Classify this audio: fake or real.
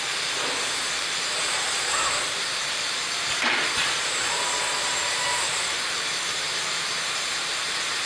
fake